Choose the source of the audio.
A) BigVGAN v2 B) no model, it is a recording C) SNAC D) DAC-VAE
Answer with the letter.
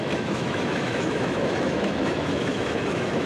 D